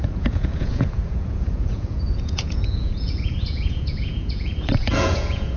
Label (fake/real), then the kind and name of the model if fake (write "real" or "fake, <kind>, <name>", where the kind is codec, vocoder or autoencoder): fake, vocoder, Vocos